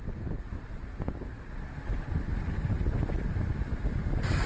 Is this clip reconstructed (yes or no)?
no